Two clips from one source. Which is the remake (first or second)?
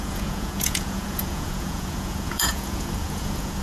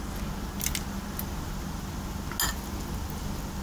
first